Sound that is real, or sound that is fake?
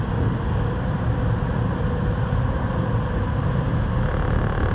real